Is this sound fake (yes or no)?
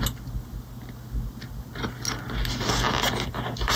no